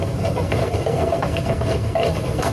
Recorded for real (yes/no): no